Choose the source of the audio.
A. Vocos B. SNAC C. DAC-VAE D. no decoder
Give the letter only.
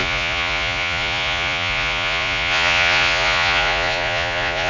A